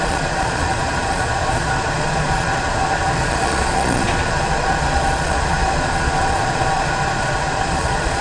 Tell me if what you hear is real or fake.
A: fake